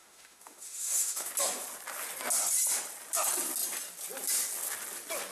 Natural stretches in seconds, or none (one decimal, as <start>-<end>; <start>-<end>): 1.3-5.3